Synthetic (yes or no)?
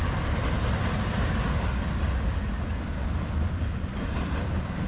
no